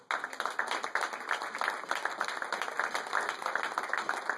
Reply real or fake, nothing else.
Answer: real